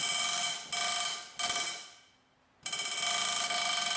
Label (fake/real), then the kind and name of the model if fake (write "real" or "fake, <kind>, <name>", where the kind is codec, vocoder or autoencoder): real